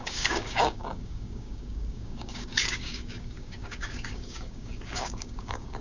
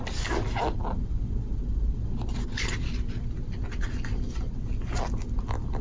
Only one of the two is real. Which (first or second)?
second